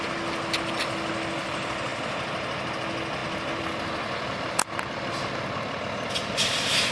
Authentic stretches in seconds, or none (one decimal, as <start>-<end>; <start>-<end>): 0.0-6.9